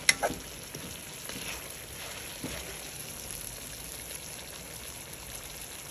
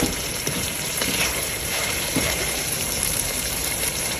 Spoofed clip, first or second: second